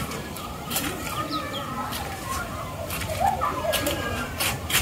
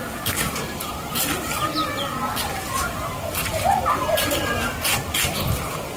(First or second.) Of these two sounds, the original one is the second